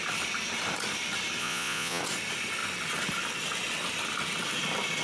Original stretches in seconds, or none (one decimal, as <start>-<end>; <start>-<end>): 0.0-1.4; 2.0-5.0

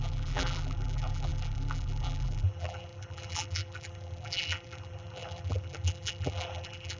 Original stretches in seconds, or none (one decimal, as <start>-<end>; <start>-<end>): none

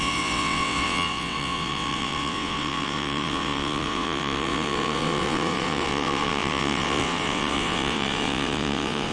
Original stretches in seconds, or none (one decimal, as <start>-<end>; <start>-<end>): none

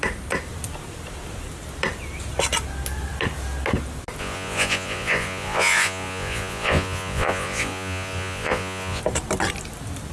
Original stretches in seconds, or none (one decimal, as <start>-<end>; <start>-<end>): 0.0-4.2; 9.0-10.1